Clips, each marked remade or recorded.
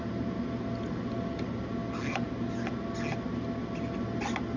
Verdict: recorded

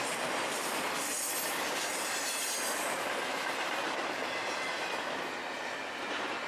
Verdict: recorded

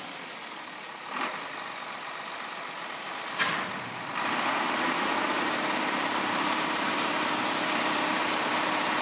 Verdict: remade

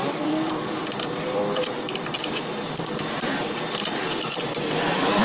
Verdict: remade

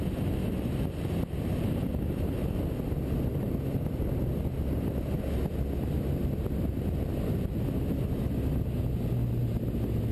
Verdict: recorded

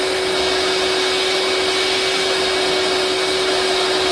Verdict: recorded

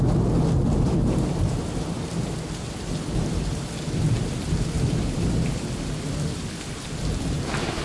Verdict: remade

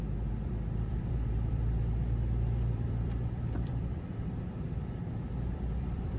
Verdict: remade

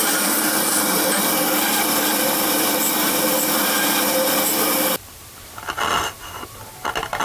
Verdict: recorded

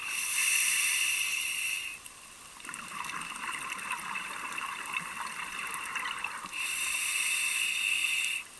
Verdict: remade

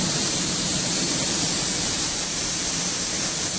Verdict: remade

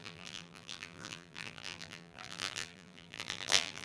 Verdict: remade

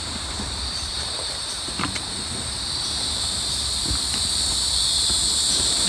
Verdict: remade